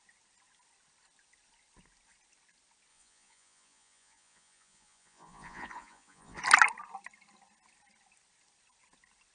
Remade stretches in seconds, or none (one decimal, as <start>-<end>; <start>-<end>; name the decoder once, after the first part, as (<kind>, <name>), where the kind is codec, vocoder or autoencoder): 2.9-6.4 (vocoder, Vocos)